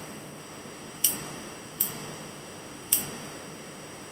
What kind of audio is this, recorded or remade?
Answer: remade